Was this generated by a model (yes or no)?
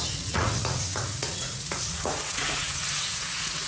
yes